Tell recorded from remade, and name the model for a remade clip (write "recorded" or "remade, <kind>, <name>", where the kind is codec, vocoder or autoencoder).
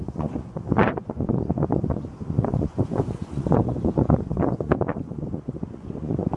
remade, vocoder, Vocos